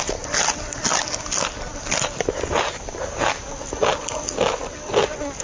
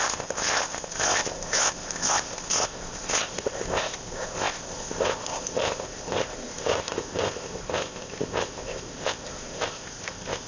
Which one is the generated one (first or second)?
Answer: second